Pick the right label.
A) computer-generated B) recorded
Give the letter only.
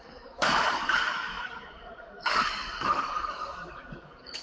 A